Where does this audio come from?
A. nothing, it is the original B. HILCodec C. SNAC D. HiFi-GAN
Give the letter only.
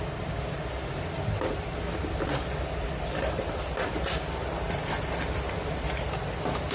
A